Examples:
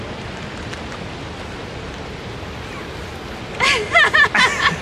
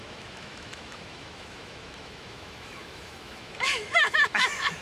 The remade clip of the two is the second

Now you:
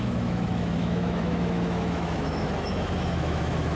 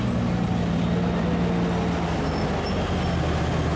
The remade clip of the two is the first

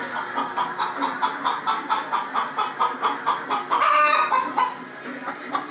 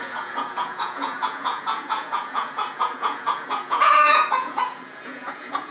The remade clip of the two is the second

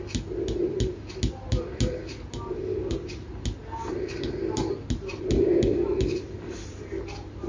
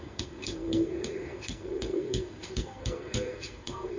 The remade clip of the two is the second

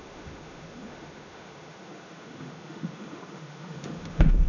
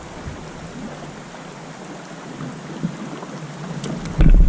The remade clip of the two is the first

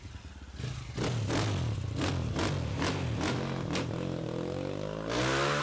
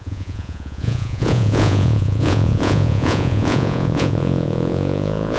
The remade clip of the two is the second